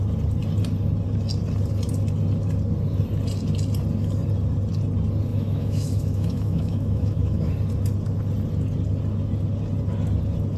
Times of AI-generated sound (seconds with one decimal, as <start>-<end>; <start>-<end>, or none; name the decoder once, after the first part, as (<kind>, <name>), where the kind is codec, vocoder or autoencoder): 5.3-7.5 (autoencoder, DAC-VAE)